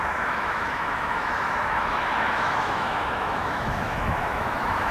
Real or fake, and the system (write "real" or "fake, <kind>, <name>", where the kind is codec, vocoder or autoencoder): fake, autoencoder, DAC-VAE